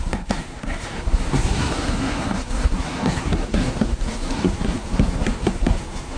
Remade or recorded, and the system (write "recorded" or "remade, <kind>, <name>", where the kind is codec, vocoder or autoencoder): remade, codec, SNAC